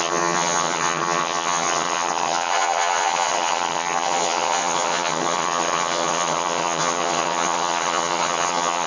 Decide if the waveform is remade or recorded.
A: remade